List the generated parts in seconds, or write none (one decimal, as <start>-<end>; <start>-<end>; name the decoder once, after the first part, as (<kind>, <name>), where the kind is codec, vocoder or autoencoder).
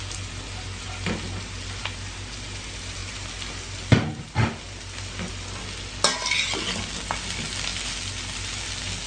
none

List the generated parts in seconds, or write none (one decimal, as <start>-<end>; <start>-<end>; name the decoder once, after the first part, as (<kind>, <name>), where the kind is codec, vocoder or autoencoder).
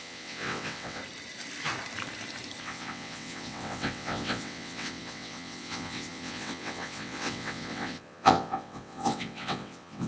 0.0-1.0 (vocoder, WaveNeXt); 2.6-10.1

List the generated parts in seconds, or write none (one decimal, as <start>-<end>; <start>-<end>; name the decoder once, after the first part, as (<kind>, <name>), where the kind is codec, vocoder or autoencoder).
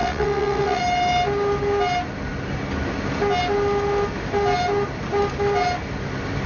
0.0-0.8 (vocoder, WaveNeXt)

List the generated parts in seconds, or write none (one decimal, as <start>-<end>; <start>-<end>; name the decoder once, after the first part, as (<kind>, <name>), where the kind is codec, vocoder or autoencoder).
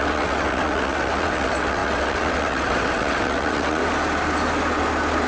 0.0-3.8 (vocoder, WaveNeXt)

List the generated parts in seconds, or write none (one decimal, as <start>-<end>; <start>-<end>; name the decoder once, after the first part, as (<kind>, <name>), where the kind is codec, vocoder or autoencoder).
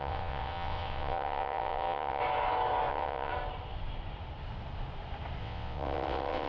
0.0-2.2 (vocoder, WaveNeXt); 2.9-3.3; 5.4-6.5